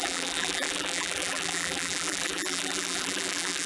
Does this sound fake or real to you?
fake